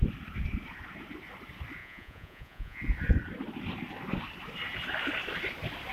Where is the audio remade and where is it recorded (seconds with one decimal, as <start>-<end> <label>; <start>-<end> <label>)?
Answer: 0.0-1.8 recorded; 1.8-2.8 remade; 2.8-5.9 recorded